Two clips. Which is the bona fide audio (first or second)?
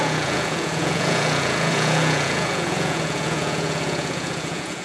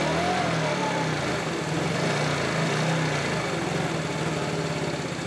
second